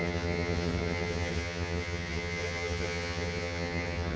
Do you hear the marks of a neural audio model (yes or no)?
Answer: yes